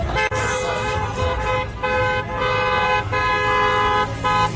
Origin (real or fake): real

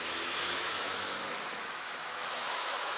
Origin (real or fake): fake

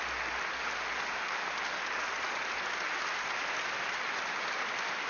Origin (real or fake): real